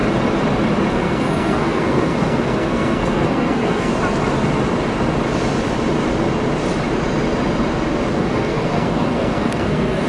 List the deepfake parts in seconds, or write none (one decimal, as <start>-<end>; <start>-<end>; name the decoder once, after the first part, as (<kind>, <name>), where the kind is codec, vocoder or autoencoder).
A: 0.9-3.9 (codec, SNAC); 8.1-10.1